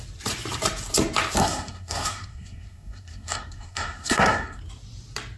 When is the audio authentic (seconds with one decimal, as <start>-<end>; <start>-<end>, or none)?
0.0-1.4; 4.6-5.4